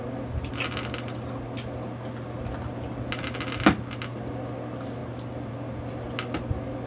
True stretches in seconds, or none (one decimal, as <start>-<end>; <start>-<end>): 0.0-6.9